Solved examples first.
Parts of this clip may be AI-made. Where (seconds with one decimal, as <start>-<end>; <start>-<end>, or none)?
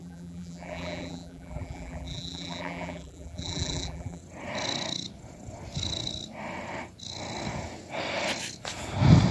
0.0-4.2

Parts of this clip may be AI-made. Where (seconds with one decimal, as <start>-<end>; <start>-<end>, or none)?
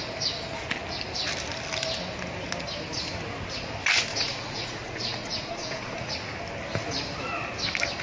4.1-6.1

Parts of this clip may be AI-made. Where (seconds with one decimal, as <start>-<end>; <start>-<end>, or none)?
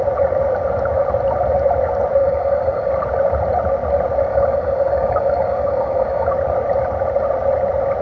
2.2-2.9; 4.3-6.3